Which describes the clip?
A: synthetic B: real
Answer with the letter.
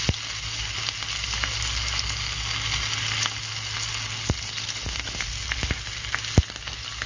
B